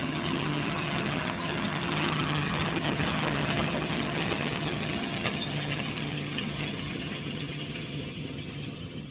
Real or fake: fake